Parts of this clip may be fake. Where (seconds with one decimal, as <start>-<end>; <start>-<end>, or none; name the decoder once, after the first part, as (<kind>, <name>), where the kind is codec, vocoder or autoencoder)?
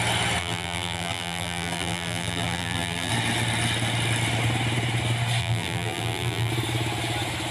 0.4-3.1 (vocoder, BigVGAN v2); 5.4-6.5